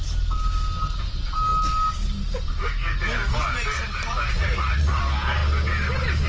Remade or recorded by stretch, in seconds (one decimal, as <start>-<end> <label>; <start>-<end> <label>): 0.0-4.1 recorded; 4.1-5.0 remade; 5.0-6.3 recorded